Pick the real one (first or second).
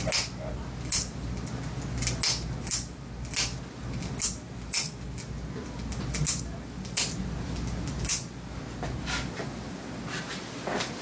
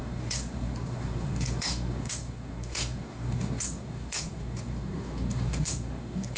first